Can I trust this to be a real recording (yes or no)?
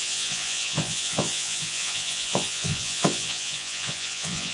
no